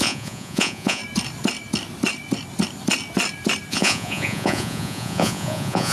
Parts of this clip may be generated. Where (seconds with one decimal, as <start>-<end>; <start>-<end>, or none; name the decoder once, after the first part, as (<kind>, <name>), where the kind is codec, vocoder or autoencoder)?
0.0-1.0 (vocoder, Vocos); 3.7-5.9

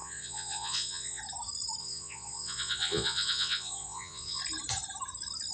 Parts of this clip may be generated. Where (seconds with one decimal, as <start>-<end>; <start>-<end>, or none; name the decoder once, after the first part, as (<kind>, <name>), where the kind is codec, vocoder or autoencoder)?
0.0-1.2 (vocoder, Vocos); 1.8-4.4